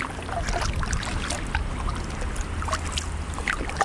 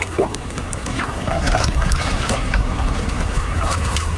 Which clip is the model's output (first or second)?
second